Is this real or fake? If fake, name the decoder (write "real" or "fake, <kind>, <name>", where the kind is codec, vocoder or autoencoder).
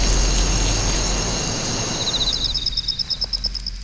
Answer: real